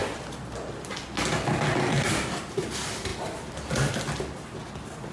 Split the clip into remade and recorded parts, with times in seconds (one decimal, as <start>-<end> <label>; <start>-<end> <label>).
0.0-5.1 recorded